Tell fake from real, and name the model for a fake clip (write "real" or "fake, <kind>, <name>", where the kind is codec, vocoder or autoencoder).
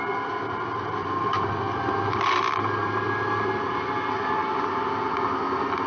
real